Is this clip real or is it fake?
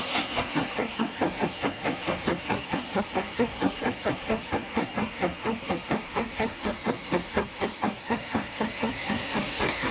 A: fake